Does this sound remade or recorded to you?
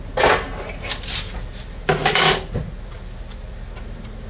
recorded